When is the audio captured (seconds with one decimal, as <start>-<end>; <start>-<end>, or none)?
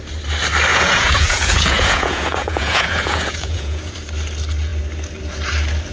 0.0-0.7; 3.9-5.9